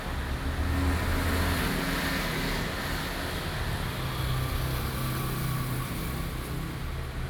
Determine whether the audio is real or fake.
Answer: real